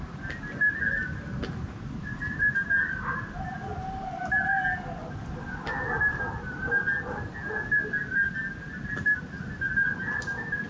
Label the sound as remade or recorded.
recorded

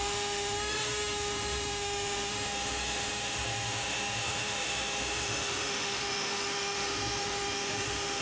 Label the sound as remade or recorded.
remade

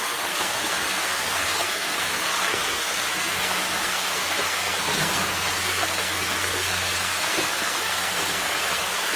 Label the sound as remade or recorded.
remade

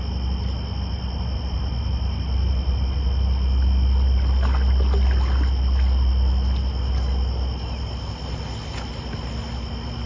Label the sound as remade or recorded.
recorded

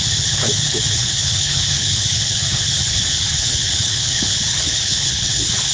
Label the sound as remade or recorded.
remade